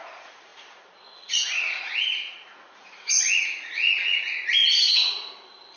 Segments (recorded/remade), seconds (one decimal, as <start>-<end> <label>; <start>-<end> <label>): 0.0-4.5 remade; 4.5-5.8 recorded